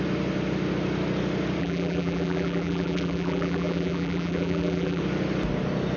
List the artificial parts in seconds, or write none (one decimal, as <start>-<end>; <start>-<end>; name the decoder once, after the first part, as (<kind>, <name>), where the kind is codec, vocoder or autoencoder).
1.6-5.0 (vocoder, BigVGAN v2)